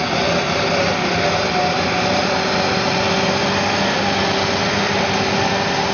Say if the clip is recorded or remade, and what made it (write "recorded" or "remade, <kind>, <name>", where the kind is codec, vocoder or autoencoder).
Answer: recorded